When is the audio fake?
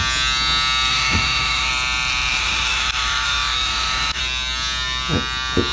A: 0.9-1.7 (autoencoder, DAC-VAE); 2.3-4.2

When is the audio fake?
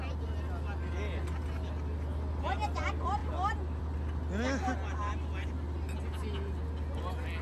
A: none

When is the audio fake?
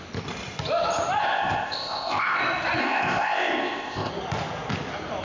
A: 1.2-2.4 (codec, ZipCodec); 2.8-4.1